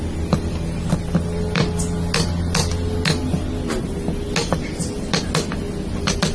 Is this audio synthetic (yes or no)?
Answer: no